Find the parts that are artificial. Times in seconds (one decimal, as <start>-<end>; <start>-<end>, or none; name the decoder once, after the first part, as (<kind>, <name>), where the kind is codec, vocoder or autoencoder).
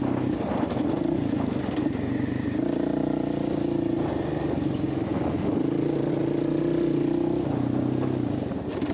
none